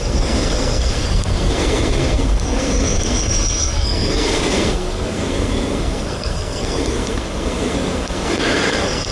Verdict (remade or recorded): remade